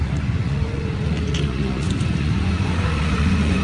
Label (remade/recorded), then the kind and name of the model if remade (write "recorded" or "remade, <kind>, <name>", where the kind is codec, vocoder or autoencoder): remade, vocoder, Vocos